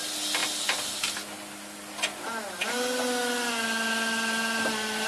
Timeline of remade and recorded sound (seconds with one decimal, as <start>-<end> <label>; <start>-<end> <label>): 0.0-5.1 recorded